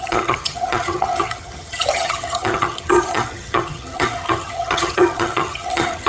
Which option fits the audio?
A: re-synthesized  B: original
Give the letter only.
A